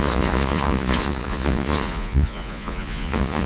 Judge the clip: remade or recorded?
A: remade